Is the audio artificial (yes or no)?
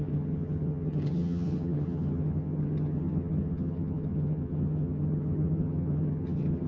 yes